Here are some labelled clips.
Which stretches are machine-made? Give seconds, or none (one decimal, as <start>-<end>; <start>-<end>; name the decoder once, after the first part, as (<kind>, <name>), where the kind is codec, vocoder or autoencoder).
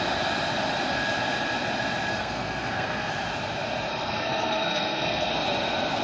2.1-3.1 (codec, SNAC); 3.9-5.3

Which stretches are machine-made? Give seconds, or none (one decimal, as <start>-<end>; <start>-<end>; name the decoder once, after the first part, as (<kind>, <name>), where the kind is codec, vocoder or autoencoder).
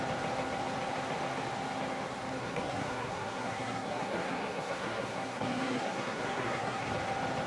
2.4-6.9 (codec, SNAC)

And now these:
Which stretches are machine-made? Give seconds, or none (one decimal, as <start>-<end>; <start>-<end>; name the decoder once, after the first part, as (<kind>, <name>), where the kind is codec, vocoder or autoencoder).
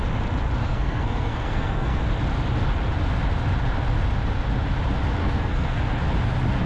0.6-2.0 (codec, SNAC); 5.2-5.8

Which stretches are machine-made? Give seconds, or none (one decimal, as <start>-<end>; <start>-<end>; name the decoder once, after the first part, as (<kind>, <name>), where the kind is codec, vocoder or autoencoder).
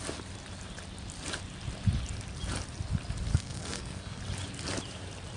3.3-4.2 (codec, SNAC)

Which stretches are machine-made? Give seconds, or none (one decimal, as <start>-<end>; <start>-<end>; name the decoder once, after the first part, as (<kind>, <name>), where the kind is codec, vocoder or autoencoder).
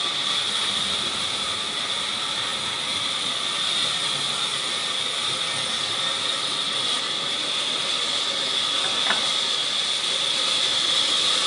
none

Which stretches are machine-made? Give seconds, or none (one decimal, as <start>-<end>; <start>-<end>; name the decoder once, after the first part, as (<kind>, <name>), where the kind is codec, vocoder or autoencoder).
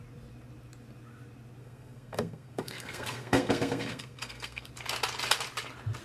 1.6-4.7 (codec, SNAC)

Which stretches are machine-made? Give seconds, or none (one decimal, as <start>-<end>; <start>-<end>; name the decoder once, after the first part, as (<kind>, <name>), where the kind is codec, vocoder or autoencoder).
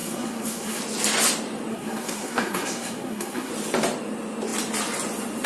0.0-0.8 (codec, SNAC); 1.7-3.5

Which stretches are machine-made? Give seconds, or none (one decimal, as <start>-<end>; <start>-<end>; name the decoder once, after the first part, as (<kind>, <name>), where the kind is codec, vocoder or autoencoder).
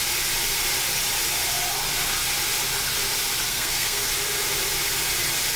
3.5-4.1 (codec, SNAC)